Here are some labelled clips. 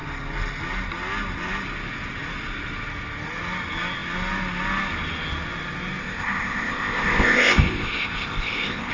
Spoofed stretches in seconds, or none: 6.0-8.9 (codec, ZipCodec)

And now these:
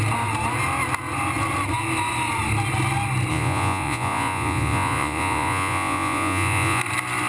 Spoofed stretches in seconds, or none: 3.3-6.8 (vocoder, Vocos)

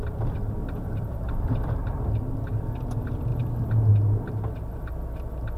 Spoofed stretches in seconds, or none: 0.6-1.5 (vocoder, BigVGAN v2); 3.3-3.9